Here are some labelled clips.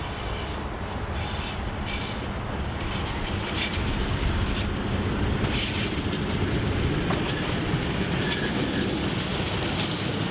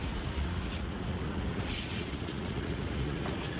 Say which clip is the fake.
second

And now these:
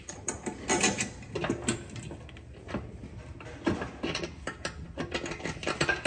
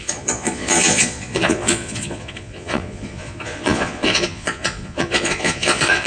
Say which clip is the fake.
second